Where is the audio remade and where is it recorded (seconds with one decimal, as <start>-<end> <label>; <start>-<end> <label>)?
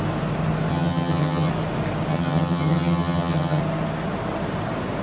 0.0-0.7 recorded; 0.7-1.5 remade; 1.5-2.1 recorded; 2.1-3.6 remade; 3.6-5.0 recorded